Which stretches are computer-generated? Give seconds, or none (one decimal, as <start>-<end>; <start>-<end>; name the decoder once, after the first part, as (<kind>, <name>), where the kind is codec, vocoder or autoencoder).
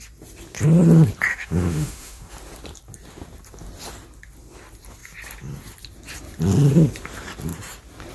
1.3-2.3 (autoencoder, DAC-VAE)